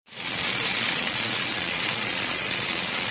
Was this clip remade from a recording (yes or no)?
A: yes